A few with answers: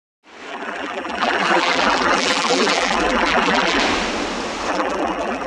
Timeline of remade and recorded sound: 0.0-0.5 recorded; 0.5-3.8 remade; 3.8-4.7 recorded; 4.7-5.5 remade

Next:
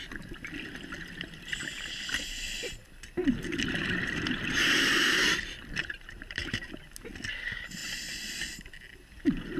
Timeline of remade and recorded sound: 0.0-5.8 recorded; 5.8-6.8 remade; 6.8-9.6 recorded

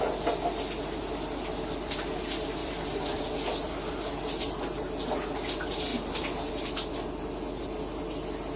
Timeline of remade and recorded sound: 0.0-2.6 recorded; 2.6-3.2 remade; 3.2-8.6 recorded